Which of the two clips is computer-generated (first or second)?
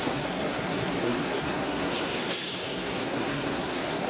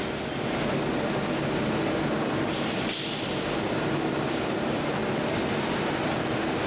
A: first